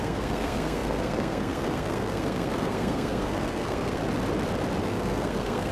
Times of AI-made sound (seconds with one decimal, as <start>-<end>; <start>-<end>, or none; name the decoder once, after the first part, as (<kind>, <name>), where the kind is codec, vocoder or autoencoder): 0.0-4.0 (codec, SNAC); 4.8-5.7